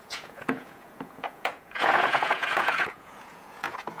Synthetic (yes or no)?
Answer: yes